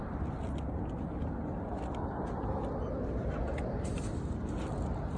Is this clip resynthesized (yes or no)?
no